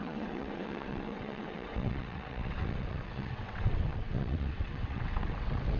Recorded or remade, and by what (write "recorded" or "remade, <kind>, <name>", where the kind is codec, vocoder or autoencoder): remade, vocoder, WaveNeXt